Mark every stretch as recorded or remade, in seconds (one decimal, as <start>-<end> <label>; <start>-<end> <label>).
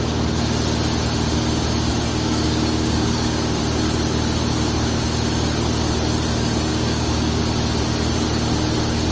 0.0-2.1 recorded; 2.1-3.6 remade; 3.6-6.7 recorded; 6.7-7.4 remade; 7.4-9.1 recorded